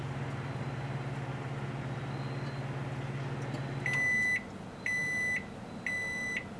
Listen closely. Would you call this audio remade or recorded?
recorded